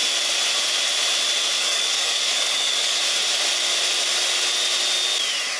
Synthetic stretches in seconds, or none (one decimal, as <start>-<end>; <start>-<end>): 1.6-3.0